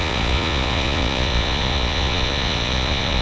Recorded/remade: remade